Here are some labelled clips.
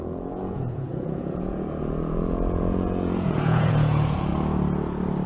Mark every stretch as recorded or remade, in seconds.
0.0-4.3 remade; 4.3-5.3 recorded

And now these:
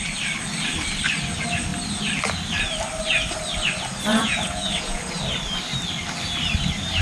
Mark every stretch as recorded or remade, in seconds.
0.0-4.1 recorded; 4.1-5.0 remade; 5.0-7.0 recorded

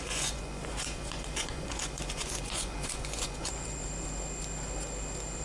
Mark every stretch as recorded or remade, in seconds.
0.0-3.8 remade; 3.8-5.4 recorded

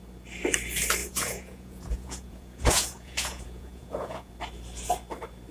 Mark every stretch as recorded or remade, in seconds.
0.0-1.0 recorded; 1.0-4.3 remade; 4.3-5.5 recorded